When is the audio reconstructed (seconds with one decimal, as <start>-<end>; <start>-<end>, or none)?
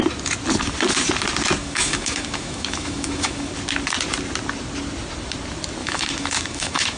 1.6-3.5; 5.8-7.0